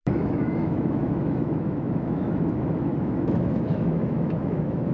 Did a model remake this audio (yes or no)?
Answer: yes